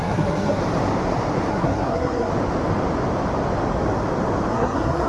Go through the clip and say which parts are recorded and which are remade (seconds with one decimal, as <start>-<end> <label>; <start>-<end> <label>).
0.0-0.6 remade; 0.6-1.5 recorded; 1.5-2.3 remade; 2.3-4.5 recorded; 4.5-5.1 remade